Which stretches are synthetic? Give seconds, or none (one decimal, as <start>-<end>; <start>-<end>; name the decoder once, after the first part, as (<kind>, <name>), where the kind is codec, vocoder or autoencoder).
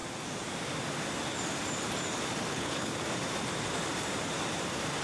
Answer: 2.5-2.9 (codec, HILCodec)